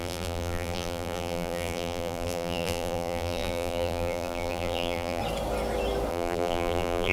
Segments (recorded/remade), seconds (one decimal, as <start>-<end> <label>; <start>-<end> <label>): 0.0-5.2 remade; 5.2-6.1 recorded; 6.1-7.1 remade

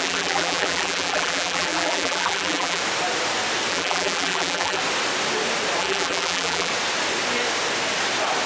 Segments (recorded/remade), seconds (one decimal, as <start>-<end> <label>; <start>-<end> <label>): 0.0-2.8 remade; 2.8-3.7 recorded; 3.7-4.8 remade; 4.8-5.8 recorded; 5.8-6.7 remade; 6.7-8.5 recorded

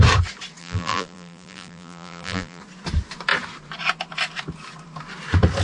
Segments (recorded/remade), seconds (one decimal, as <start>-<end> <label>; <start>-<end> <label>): 0.0-0.6 recorded; 0.6-2.6 remade; 2.6-5.6 recorded

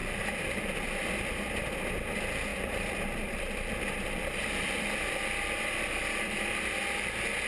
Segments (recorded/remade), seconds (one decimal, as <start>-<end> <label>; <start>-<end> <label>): 0.0-1.1 remade; 1.1-2.5 recorded; 2.5-6.8 remade; 6.8-7.5 recorded